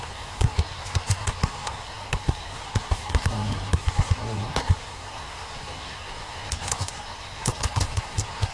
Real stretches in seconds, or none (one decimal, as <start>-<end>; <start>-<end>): none